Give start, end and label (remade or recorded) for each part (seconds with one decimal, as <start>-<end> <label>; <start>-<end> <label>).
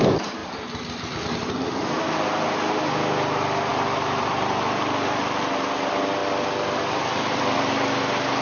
0.0-0.4 recorded; 0.4-2.9 remade; 2.9-3.7 recorded; 3.7-5.2 remade; 5.2-6.2 recorded; 6.2-7.7 remade; 7.7-8.4 recorded